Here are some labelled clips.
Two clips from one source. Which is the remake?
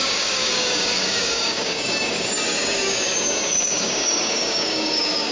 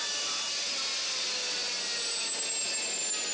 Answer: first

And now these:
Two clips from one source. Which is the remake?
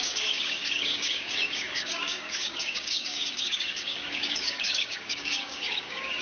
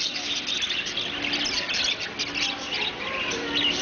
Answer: first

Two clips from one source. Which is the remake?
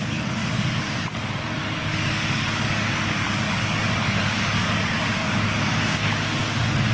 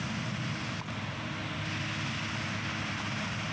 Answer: first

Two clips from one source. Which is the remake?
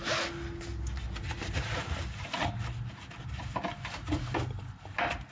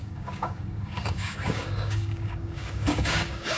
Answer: second